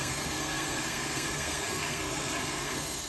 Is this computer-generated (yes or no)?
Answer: yes